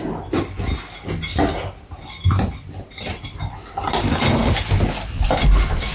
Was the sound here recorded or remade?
recorded